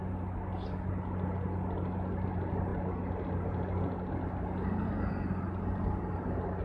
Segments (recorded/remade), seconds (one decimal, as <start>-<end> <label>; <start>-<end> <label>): 0.0-6.6 recorded